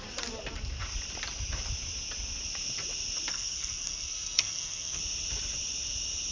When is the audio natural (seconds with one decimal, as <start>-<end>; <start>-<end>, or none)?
0.0-3.3; 5.0-6.3